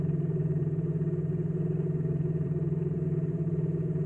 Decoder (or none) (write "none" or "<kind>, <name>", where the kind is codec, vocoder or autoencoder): vocoder, BigVGAN v2